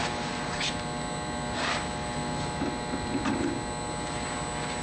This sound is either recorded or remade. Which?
recorded